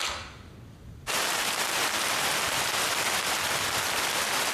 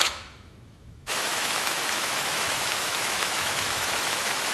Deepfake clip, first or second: second